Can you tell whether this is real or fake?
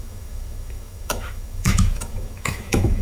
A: fake